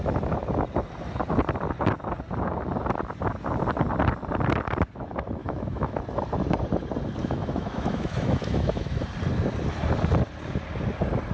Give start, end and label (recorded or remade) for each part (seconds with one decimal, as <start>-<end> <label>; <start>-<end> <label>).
0.0-5.4 recorded; 5.4-6.0 remade; 6.0-7.2 recorded; 7.2-9.0 remade; 9.0-11.3 recorded